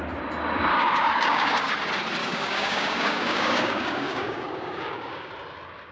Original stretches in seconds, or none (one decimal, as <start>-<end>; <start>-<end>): 0.0-0.7; 1.7-2.2; 5.3-5.9